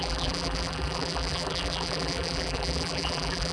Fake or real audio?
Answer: fake